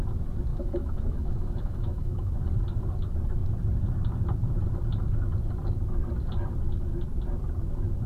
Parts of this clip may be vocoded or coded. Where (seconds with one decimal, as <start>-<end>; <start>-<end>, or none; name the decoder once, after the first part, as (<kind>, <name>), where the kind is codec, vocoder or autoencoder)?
0.5-2.3 (autoencoder, DAC-VAE)